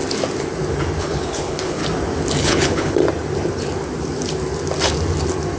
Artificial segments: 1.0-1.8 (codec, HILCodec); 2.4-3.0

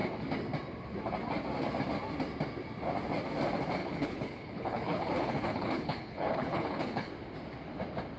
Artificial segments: 3.8-7.1 (codec, HILCodec)

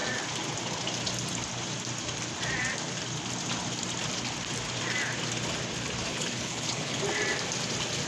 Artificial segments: 6.1-7.0 (codec, HILCodec)

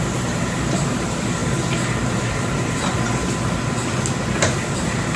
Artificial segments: none

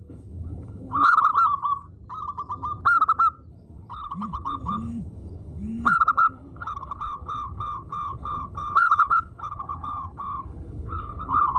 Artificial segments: 0.0-1.3 (codec, HILCodec); 3.5-11.6

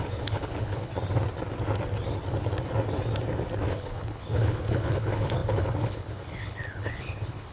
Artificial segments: 0.0-0.9 (codec, HILCodec); 3.7-7.5

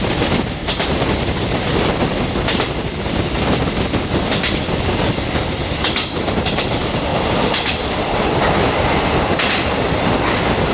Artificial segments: none

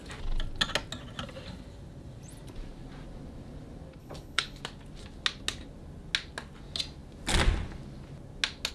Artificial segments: 4.0-4.6 (codec, HILCodec)